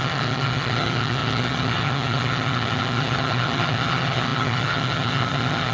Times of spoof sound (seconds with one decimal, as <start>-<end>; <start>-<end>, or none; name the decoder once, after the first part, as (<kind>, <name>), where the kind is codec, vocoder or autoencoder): 0.0-5.7 (vocoder, HiFi-GAN)